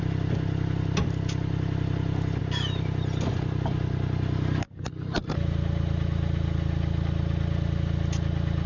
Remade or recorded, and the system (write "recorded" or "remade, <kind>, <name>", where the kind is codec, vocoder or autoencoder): recorded